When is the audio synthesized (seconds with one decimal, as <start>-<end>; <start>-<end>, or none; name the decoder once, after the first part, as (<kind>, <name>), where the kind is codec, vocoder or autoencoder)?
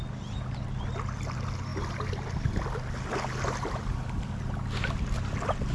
none